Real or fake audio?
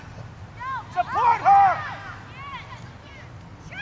real